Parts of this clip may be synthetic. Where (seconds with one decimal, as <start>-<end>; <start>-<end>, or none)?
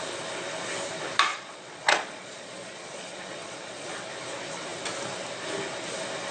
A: 1.3-3.9